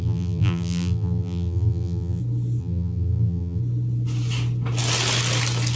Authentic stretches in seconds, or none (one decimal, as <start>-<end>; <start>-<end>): 2.2-2.6; 3.6-5.8